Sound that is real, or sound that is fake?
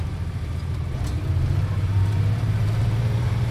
fake